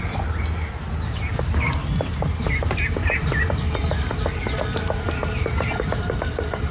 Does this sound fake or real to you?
real